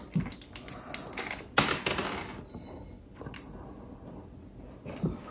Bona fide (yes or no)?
yes